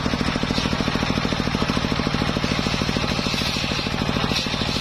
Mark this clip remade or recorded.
recorded